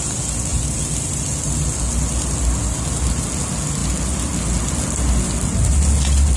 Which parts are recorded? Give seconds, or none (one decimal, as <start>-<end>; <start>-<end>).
0.0-6.4